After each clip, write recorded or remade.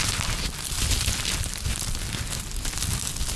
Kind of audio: recorded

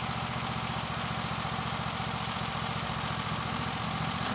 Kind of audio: recorded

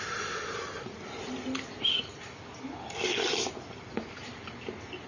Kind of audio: recorded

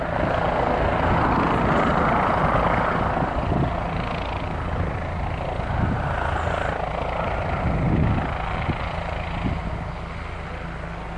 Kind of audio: recorded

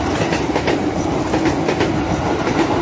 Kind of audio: recorded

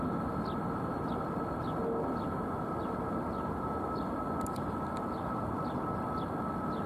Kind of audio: recorded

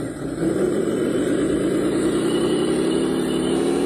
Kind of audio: recorded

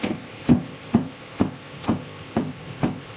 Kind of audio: remade